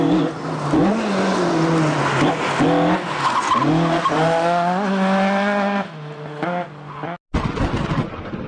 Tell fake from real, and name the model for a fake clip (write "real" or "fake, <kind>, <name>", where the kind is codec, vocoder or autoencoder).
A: real